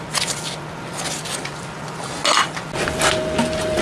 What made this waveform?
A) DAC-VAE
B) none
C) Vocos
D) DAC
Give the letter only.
B